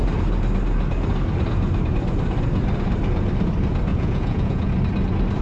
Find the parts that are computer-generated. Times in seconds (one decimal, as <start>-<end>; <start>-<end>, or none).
3.9-4.7